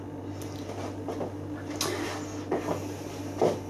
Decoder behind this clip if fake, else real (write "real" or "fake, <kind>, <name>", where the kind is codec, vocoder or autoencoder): real